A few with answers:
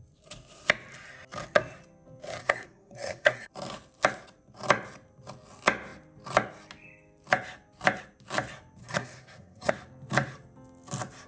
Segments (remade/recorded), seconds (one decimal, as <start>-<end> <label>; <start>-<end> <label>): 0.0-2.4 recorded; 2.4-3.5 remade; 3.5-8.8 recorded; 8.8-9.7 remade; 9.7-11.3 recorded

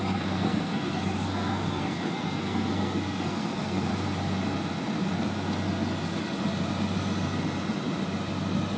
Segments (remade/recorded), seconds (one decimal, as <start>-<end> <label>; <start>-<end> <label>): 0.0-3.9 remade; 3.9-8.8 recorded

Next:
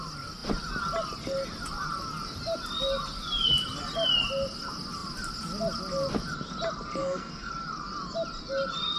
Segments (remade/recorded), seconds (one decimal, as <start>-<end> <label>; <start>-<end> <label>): 0.0-7.0 recorded; 7.0-7.5 remade; 7.5-9.0 recorded